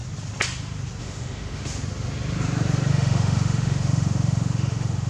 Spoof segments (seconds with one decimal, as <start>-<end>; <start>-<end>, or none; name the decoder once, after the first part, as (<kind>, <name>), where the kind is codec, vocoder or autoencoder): 1.0-1.8 (autoencoder, DAC-VAE); 2.9-5.1